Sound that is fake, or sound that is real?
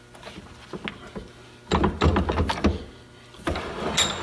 real